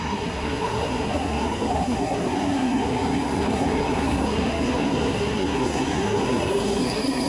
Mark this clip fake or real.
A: fake